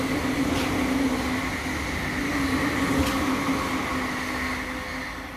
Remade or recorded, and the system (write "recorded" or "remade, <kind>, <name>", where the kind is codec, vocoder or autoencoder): recorded